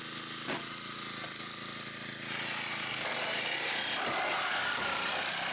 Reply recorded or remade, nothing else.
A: recorded